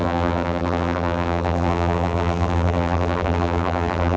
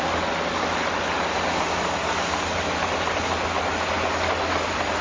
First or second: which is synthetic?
first